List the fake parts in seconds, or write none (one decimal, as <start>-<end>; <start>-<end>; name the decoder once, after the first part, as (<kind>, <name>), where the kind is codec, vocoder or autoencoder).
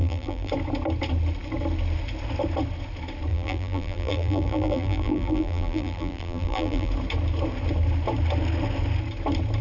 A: 0.0-0.5 (vocoder, BigVGAN v2); 3.3-6.9